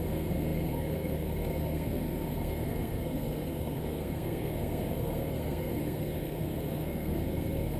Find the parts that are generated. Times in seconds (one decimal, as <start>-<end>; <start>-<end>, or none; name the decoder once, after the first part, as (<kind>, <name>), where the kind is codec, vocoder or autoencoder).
0.0-7.8 (codec, SNAC)